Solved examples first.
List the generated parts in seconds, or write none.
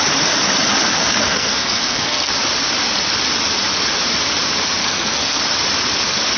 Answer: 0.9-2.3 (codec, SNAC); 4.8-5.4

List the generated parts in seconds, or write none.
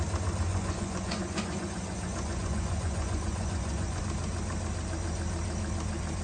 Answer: 0.5-4.0 (vocoder, Vocos)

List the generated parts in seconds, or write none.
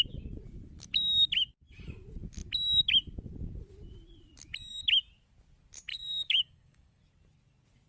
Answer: 5.9-7.0 (codec, DAC)